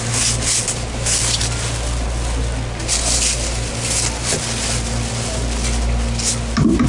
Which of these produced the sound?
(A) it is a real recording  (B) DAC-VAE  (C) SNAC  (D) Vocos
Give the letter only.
A